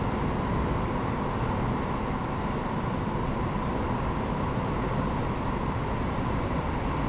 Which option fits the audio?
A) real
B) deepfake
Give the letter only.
A